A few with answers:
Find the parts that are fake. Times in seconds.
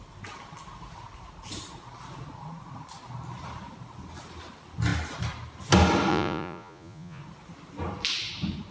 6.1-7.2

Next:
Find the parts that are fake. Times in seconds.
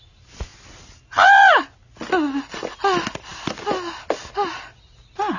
none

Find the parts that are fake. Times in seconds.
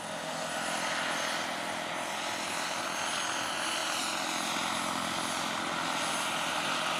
none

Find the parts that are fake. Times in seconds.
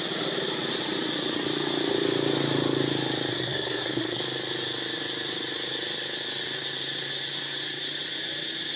3.3-4.2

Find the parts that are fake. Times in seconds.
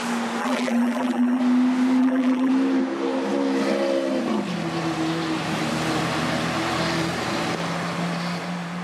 0.4-1.4; 2.0-2.5